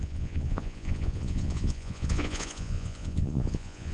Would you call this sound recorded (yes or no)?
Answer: no